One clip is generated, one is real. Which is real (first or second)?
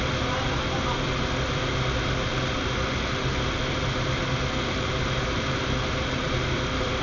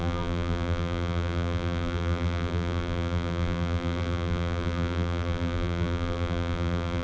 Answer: first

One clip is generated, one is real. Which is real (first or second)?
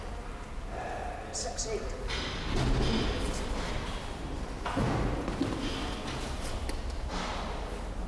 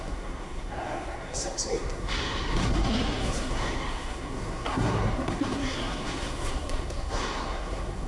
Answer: first